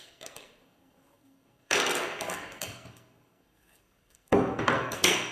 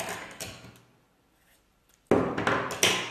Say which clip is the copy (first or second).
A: first